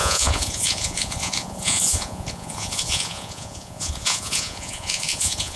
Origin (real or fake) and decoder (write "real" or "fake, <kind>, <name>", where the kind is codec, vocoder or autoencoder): fake, vocoder, Vocos